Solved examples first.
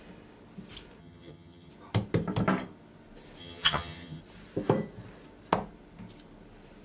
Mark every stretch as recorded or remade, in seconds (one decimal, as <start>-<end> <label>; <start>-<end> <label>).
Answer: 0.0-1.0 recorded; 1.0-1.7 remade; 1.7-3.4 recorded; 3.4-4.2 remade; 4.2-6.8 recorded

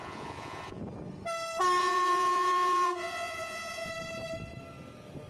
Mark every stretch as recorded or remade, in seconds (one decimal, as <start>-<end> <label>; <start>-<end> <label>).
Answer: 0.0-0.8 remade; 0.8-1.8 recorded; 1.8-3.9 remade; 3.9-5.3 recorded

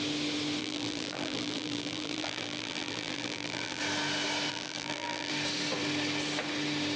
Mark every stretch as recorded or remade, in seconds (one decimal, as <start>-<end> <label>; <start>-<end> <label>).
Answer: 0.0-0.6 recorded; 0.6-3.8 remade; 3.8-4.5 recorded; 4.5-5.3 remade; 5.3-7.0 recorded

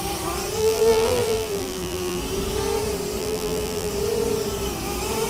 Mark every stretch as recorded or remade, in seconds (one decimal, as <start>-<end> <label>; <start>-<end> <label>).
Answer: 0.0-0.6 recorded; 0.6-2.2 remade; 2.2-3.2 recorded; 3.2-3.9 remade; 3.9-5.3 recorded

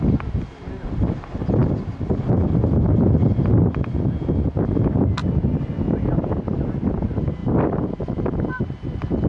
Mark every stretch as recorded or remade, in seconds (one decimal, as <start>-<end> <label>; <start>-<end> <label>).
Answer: 0.0-9.3 recorded

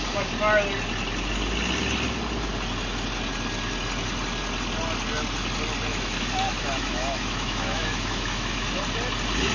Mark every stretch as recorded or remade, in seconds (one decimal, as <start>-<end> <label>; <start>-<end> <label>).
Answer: 0.0-5.9 recorded; 5.9-8.8 remade; 8.8-9.5 recorded

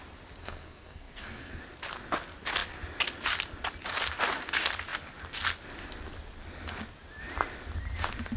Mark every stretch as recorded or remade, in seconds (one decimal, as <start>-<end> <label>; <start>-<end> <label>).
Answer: 0.0-0.4 recorded; 0.4-1.6 remade; 1.6-8.4 recorded

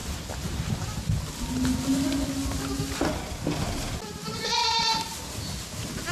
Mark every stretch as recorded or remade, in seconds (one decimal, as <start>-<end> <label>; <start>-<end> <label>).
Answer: 0.0-4.6 recorded; 4.6-5.3 remade; 5.3-6.1 recorded